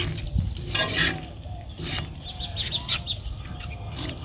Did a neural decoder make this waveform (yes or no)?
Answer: no